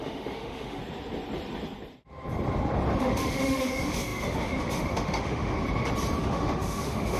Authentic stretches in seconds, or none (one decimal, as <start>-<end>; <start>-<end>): 0.8-3.0; 5.6-6.2